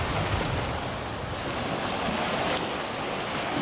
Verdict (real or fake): real